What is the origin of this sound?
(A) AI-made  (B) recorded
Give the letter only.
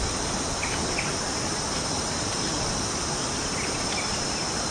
B